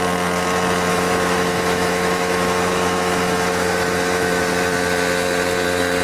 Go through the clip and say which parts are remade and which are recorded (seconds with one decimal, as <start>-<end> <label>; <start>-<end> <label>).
0.0-0.9 recorded; 0.9-4.5 remade; 4.5-6.0 recorded

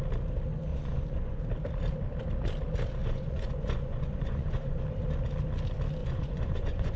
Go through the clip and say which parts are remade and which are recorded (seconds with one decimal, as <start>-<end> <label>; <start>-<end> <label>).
0.0-0.7 recorded; 0.7-1.4 remade; 1.4-3.0 recorded; 3.0-4.8 remade; 4.8-6.0 recorded; 6.0-7.0 remade